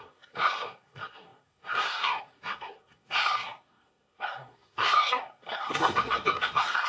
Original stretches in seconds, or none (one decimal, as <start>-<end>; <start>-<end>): none

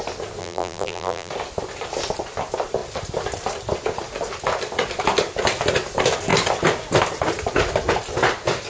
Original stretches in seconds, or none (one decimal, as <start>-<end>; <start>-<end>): 0.0-0.4; 1.3-8.7

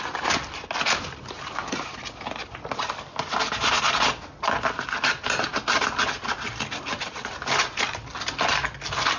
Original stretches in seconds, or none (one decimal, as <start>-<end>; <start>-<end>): 0.0-9.2

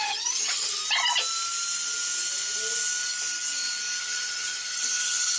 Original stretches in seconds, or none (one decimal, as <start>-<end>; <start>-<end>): 0.8-4.0

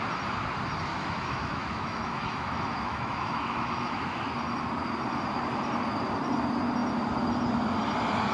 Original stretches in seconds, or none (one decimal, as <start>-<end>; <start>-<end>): 0.0-0.9; 4.3-8.3

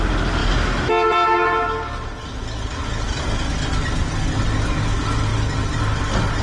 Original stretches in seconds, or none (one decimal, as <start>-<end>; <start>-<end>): 0.0-6.4

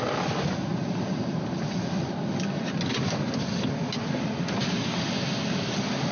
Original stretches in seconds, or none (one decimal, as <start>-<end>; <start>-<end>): 0.0-0.7; 2.6-6.1

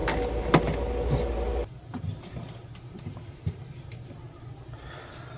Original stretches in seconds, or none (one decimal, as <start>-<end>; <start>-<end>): 0.0-5.4